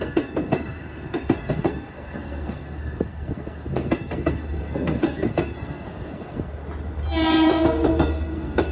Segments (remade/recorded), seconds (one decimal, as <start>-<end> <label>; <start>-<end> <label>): 0.0-6.6 remade; 6.6-8.1 recorded; 8.1-8.7 remade